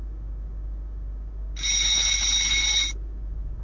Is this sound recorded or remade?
recorded